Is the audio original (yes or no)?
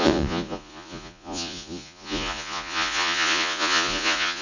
no